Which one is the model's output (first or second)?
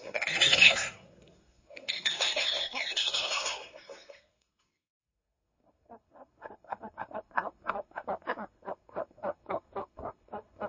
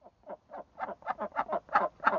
first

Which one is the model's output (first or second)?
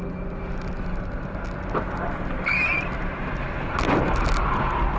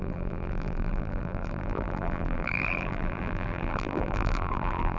second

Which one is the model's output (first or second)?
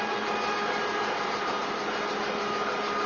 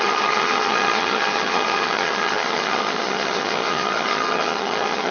second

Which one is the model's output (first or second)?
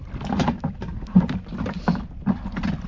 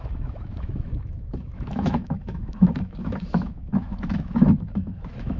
second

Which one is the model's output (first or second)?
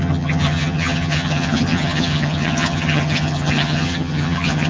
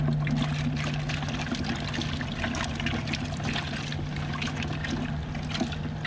first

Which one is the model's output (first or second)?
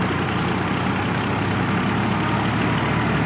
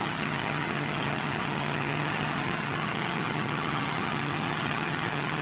second